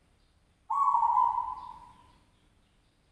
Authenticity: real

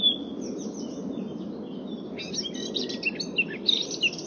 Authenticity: real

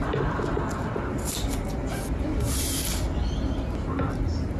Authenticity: real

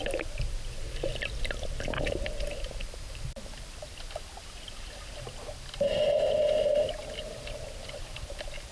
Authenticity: real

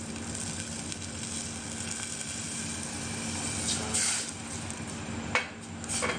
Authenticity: real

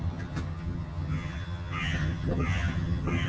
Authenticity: fake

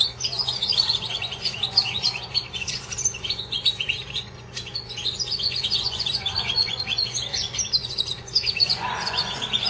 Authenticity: fake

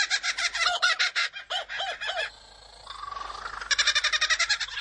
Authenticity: real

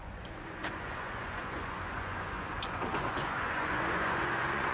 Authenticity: fake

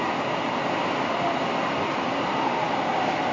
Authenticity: real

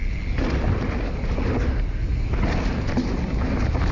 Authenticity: real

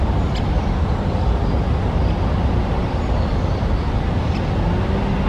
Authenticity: real